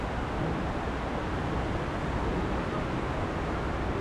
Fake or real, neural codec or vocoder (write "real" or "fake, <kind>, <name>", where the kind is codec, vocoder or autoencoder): real